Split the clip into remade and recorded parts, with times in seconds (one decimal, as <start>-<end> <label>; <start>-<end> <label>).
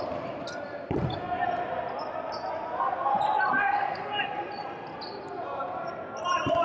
0.0-3.6 recorded; 3.6-4.1 remade; 4.1-6.6 recorded